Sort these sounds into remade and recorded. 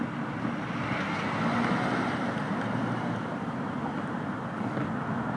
recorded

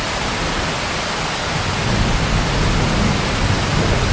recorded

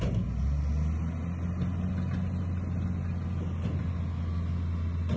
recorded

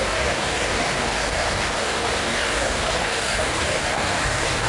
remade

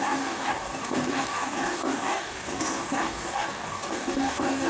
remade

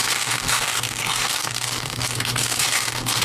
remade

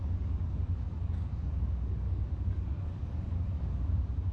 remade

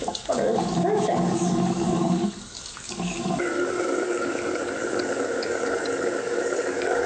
remade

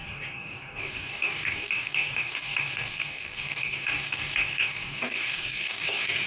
remade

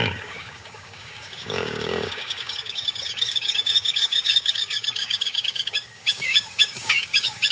remade